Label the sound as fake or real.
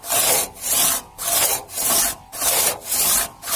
real